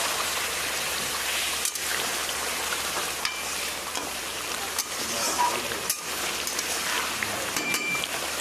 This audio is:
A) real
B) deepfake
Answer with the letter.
B